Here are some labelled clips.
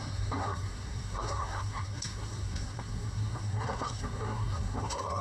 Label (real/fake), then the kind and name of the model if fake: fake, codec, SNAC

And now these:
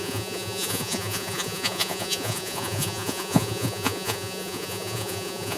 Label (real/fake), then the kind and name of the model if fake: fake, vocoder, Vocos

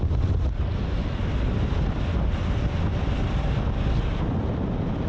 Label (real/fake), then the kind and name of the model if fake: real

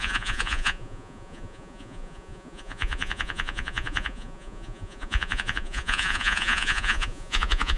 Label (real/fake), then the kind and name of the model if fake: fake, vocoder, Vocos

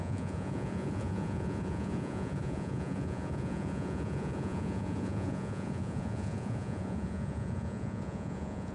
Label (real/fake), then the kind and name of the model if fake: fake, vocoder, Vocos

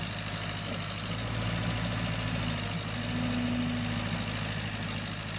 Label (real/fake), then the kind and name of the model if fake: real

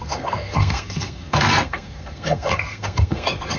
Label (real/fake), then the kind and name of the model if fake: fake, codec, SNAC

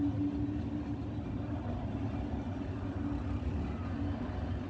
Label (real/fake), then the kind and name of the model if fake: real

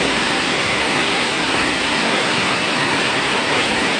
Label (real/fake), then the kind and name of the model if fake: fake, codec, SNAC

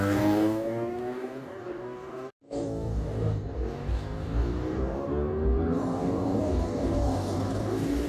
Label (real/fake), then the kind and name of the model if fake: fake, codec, DAC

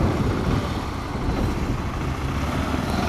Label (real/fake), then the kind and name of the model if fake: real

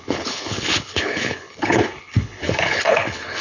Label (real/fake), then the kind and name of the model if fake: fake, codec, HILCodec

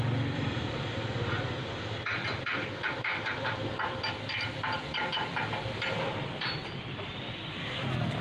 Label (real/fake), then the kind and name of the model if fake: fake, vocoder, BigVGAN v2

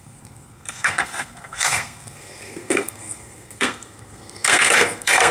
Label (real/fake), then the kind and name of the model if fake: fake, codec, SNAC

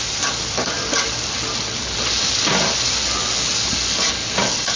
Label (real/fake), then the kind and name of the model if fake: real